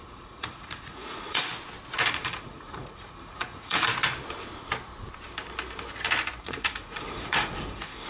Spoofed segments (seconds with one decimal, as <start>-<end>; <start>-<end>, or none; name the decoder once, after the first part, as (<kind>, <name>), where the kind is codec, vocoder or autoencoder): 0.0-1.5 (vocoder, Vocos); 2.1-3.9; 6.4-8.1